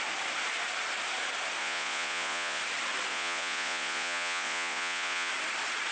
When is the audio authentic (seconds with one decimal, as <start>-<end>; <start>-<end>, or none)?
0.0-1.6; 2.6-3.1; 5.3-5.9